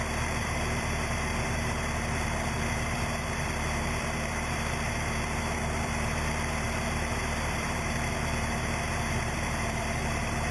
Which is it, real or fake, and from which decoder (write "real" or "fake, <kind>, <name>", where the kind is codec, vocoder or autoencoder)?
fake, vocoder, BigVGAN v2